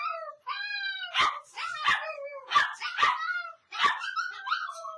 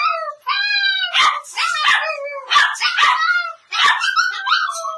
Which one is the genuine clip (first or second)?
second